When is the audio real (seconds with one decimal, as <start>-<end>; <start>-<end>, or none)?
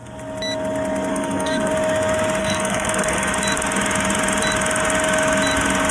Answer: 0.0-1.1; 1.7-2.4; 3.3-5.9